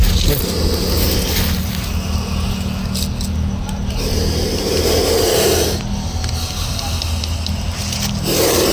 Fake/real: real